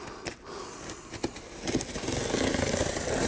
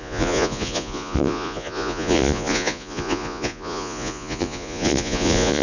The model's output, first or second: second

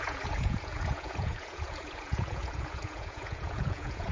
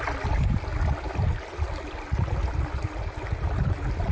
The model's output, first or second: first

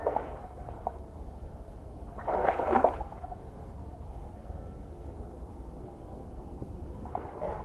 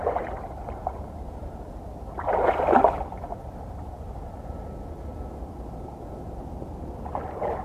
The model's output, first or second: first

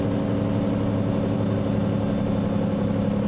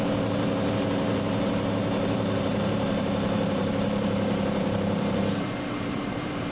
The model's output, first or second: second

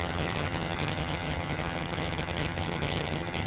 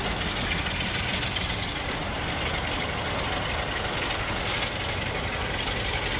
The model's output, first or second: first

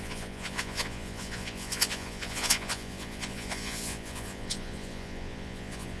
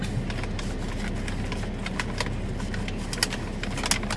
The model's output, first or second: first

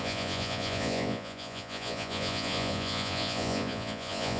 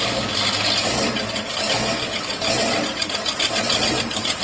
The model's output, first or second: first